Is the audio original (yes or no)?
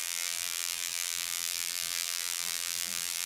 no